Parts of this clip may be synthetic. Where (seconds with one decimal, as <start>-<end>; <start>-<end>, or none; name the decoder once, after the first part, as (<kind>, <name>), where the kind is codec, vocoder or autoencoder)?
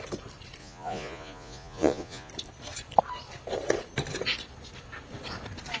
0.6-2.3 (vocoder, Vocos)